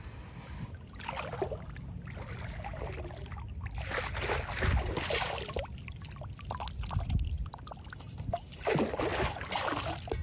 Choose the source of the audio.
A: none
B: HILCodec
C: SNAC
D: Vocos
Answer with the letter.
A